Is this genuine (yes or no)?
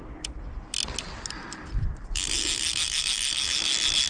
yes